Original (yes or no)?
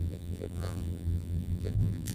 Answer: no